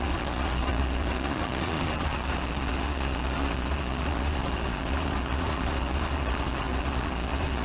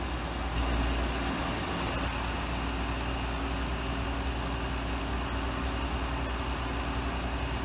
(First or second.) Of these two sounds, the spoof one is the first